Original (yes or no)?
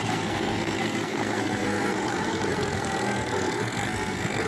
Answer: no